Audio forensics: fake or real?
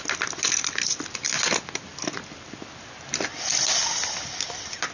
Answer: real